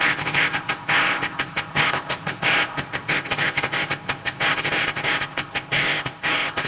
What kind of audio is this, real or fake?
fake